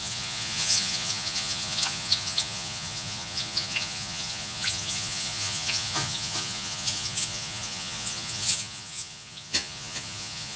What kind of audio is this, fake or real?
fake